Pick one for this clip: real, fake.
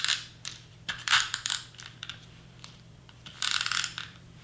fake